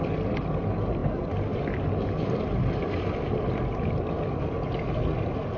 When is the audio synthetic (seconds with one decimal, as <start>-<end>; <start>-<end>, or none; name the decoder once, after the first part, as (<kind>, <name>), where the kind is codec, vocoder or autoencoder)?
none